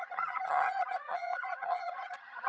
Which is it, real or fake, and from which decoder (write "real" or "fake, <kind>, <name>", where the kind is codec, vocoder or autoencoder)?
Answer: fake, vocoder, HiFi-GAN